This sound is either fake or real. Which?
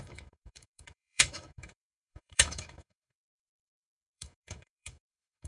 fake